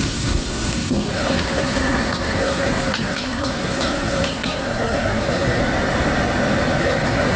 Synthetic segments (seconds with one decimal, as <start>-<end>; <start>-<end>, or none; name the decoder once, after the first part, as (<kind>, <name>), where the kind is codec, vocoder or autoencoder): 0.0-5.6 (codec, SNAC); 6.8-7.4